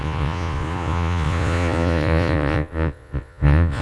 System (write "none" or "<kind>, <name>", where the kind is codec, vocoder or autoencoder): vocoder, Vocos